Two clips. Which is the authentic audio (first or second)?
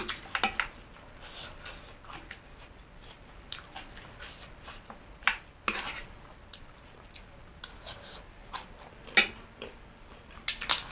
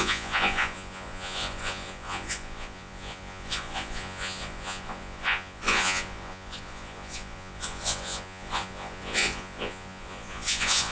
first